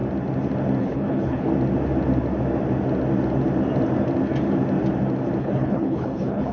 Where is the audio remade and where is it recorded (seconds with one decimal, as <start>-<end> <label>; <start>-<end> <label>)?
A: 0.0-0.8 recorded; 0.8-1.5 remade; 1.5-5.4 recorded; 5.4-6.5 remade